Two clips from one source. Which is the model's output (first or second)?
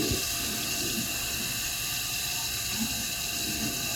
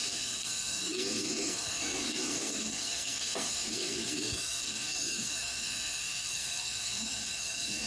second